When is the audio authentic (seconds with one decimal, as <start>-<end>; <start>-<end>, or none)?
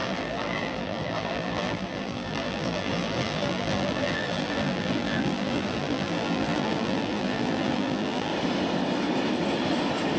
8.3-10.2